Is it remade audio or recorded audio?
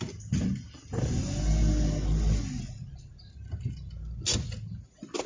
recorded